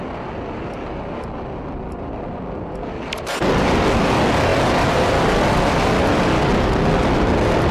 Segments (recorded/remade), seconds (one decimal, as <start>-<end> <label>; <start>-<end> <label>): 0.0-7.7 recorded